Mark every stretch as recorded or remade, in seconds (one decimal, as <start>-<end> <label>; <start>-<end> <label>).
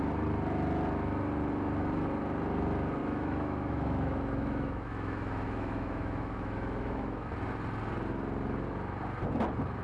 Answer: 0.0-3.0 recorded; 3.0-7.3 remade; 7.3-9.8 recorded